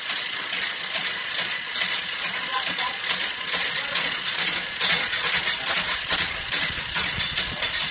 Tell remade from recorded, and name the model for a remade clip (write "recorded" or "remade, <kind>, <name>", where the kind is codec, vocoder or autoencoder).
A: remade, vocoder, Vocos